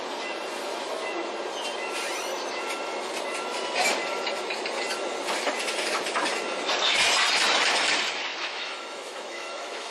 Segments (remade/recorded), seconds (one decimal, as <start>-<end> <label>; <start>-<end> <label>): 0.0-8.3 recorded; 8.3-9.9 remade

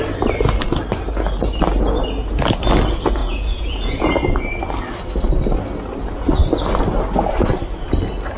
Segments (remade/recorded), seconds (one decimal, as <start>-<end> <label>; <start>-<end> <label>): 0.0-3.2 recorded; 3.2-4.6 remade; 4.6-8.4 recorded

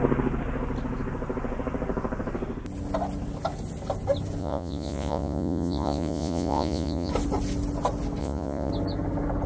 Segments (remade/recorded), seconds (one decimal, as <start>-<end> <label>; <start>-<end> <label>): 0.0-4.4 recorded; 4.4-7.1 remade; 7.1-8.2 recorded; 8.2-8.7 remade; 8.7-9.5 recorded

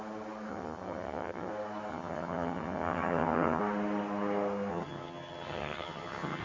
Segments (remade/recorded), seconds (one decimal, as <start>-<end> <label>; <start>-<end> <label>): 0.0-0.5 recorded; 0.5-1.5 remade; 1.5-1.9 recorded; 1.9-3.6 remade; 3.6-4.7 recorded; 4.7-6.4 remade

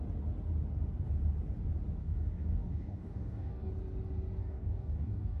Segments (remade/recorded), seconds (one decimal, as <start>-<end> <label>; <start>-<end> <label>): 0.0-2.0 recorded; 2.0-3.7 remade; 3.7-4.4 recorded; 4.4-5.4 remade

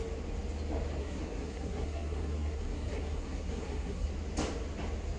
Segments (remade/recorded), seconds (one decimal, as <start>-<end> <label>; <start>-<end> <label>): 0.0-1.0 recorded; 1.0-4.1 remade; 4.1-5.2 recorded

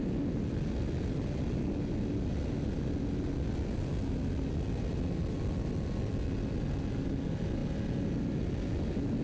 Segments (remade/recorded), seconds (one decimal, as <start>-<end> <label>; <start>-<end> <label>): 0.0-9.2 recorded